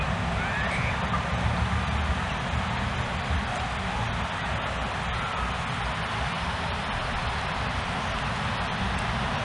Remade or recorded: recorded